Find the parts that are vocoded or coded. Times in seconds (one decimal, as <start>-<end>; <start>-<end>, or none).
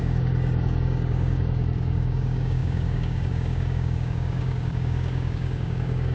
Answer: 0.0-6.1